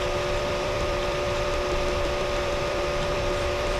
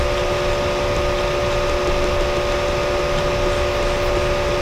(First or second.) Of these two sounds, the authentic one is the second